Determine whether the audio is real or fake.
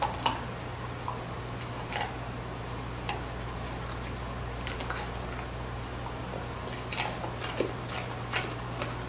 real